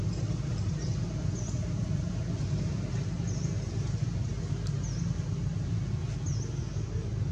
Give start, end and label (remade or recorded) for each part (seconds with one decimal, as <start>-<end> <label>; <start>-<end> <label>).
0.0-7.3 recorded